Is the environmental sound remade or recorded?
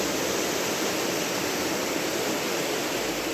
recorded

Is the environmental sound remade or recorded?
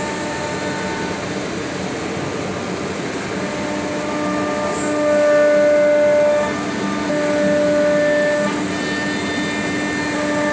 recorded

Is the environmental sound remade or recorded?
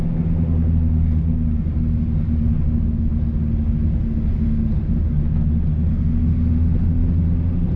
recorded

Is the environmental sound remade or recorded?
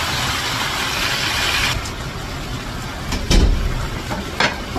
recorded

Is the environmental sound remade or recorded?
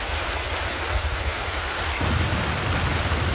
recorded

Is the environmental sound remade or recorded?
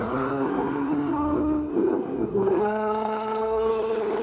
remade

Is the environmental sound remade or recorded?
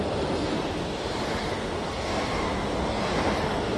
recorded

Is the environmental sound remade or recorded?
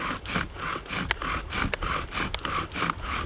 recorded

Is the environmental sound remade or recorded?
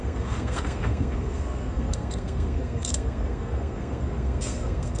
remade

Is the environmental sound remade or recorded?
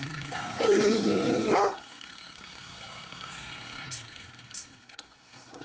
remade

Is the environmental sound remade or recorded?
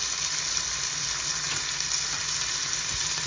recorded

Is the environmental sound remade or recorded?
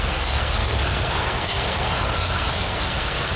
remade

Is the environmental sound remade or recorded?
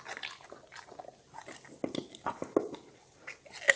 recorded